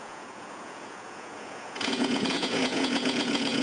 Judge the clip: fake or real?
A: fake